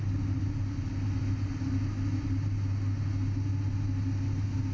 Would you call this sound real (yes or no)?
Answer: yes